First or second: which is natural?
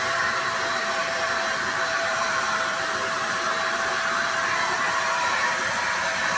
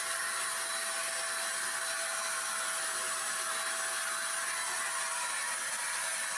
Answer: second